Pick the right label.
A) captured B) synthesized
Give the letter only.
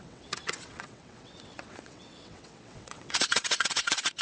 B